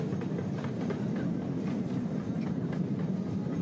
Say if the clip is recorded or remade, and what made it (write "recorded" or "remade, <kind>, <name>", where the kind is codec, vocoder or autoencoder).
recorded